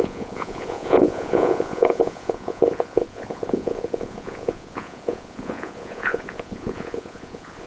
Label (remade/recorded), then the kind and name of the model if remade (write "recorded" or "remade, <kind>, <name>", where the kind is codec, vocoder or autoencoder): remade, vocoder, Vocos